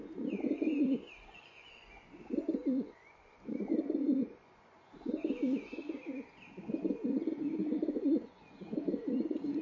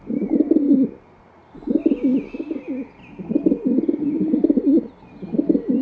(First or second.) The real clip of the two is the second